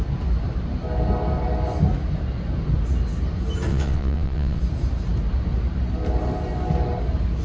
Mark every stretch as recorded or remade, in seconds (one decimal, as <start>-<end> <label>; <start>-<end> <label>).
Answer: 0.0-3.7 recorded; 3.7-4.6 remade; 4.6-7.4 recorded